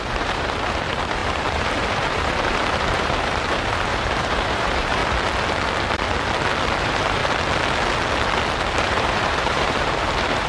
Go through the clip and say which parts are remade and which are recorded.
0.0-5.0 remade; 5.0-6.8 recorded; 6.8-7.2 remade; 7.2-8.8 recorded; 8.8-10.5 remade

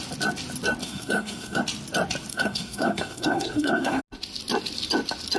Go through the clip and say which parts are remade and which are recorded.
0.0-0.8 recorded; 0.8-1.6 remade; 1.6-2.3 recorded; 2.3-4.0 remade; 4.0-5.4 recorded